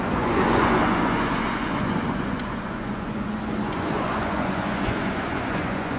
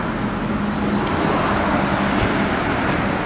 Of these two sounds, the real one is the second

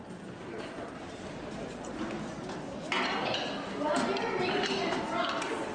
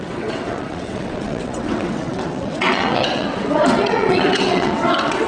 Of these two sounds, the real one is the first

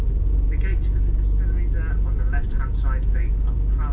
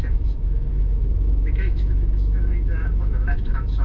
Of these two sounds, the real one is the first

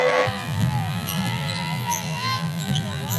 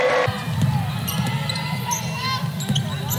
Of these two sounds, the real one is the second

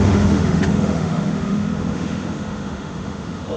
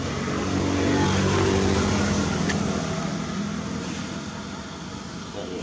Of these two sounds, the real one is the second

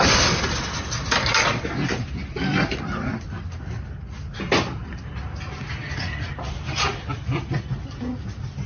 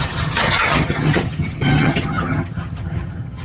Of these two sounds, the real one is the first